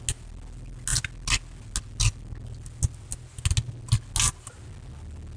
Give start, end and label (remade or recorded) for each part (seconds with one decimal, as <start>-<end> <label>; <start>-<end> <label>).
0.0-5.4 recorded